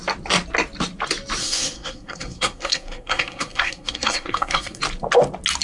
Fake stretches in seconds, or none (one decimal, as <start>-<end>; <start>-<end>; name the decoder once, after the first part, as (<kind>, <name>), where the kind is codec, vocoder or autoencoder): 1.4-4.8 (codec, SNAC)